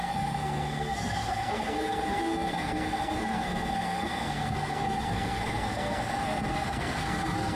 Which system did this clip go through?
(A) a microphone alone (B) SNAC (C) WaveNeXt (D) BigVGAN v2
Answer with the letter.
B